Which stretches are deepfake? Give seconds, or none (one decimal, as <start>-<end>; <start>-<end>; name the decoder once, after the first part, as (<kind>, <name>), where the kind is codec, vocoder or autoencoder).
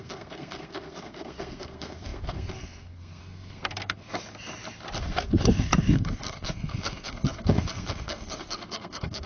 0.0-4.1 (codec, SNAC); 5.0-9.3